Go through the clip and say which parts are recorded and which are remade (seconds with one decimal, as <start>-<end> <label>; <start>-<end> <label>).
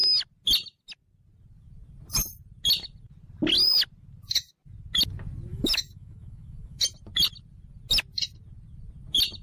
0.0-5.5 recorded; 5.5-6.8 remade; 6.8-9.4 recorded